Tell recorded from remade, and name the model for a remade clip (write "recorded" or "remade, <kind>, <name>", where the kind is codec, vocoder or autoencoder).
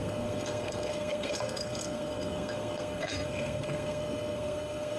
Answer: remade, codec, SNAC